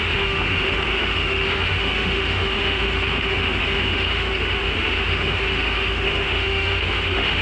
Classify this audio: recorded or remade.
remade